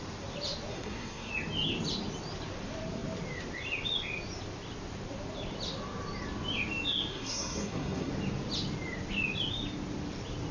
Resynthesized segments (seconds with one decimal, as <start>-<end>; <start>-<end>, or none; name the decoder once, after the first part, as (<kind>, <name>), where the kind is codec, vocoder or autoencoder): 0.7-1.3 (codec, SNAC); 7.1-8.1